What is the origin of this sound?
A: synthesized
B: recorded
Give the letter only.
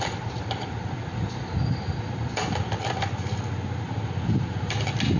B